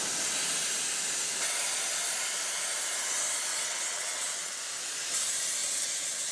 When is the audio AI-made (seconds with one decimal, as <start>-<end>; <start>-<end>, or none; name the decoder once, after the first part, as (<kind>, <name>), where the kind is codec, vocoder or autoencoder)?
3.5-4.6 (vocoder, WaveNeXt); 5.6-6.3